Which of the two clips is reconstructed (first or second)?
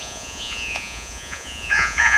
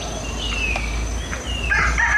first